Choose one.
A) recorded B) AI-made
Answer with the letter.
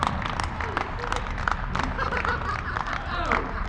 A